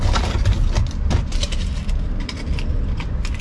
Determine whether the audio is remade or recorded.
recorded